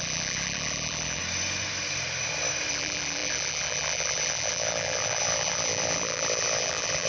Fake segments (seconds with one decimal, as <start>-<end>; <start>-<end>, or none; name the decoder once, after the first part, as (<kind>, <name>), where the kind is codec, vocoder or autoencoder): 0.0-1.2 (vocoder, BigVGAN v2); 2.7-7.1